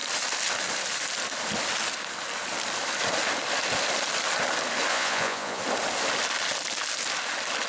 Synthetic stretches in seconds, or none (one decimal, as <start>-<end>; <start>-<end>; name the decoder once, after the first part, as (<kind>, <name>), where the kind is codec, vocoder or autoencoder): 4.9-5.6 (vocoder, Vocos)